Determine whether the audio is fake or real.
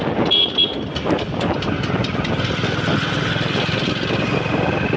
real